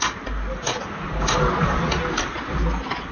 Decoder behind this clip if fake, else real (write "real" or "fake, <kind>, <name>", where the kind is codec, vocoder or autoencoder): real